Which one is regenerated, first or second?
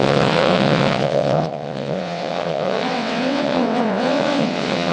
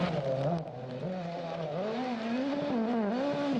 first